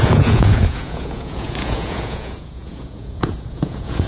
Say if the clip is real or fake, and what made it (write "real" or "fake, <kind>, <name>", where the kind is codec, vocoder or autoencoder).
fake, vocoder, Vocos